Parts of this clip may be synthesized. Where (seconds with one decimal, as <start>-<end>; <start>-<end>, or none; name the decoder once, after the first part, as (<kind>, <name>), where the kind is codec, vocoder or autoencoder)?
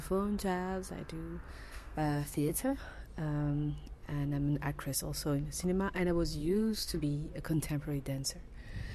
1.5-2.8 (codec, SNAC); 6.4-7.0